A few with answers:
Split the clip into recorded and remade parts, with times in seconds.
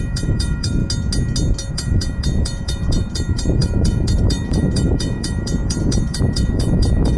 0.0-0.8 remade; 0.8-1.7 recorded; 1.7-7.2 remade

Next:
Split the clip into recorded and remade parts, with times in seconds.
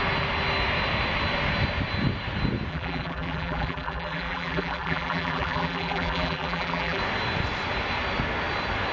0.0-2.7 recorded; 2.7-7.0 remade; 7.0-8.9 recorded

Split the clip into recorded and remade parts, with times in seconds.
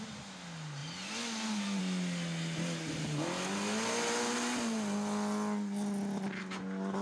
0.0-7.0 recorded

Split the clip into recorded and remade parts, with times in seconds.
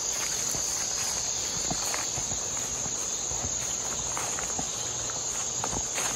0.0-6.2 recorded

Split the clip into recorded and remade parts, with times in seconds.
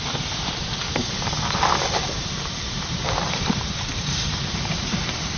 0.0-2.2 recorded; 2.2-5.4 remade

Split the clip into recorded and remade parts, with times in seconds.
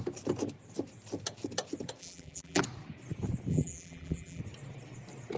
0.0-2.0 recorded; 2.0-2.6 remade; 2.6-3.5 recorded; 3.5-4.4 remade; 4.4-5.4 recorded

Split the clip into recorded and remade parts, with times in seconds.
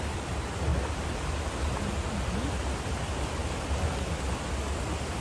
0.0-0.7 recorded; 0.7-1.8 remade; 1.8-5.2 recorded